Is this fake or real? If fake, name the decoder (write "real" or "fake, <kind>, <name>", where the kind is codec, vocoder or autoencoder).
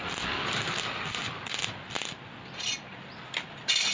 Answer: real